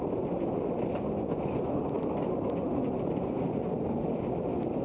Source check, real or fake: real